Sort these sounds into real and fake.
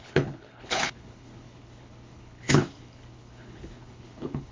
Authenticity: fake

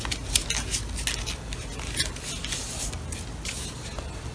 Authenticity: real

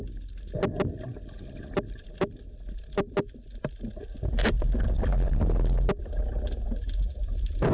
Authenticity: real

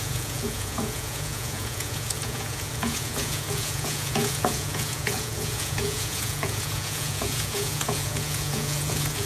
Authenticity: fake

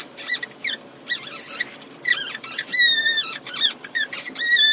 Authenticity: real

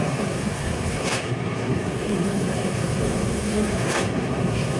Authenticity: fake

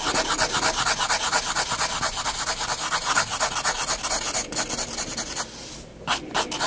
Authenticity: real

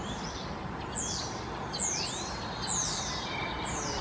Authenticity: real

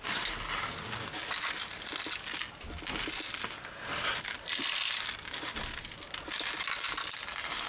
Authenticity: real